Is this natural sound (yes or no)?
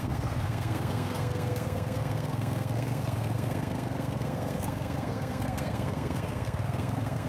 no